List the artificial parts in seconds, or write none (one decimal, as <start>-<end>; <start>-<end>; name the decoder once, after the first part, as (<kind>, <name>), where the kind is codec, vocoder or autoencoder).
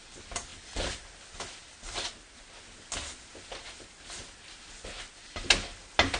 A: none